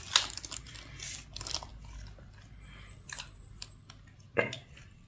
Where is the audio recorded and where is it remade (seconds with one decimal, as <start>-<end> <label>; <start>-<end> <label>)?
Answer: 0.0-5.1 recorded